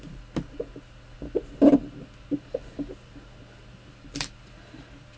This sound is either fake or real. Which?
real